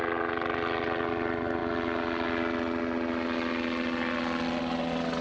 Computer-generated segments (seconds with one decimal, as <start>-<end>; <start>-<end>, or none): none